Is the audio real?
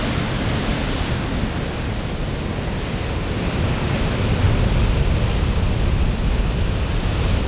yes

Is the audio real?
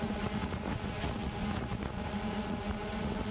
no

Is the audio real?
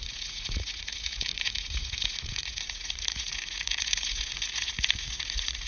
no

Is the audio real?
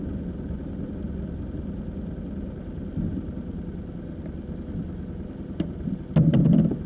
yes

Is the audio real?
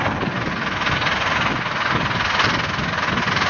yes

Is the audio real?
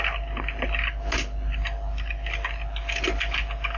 yes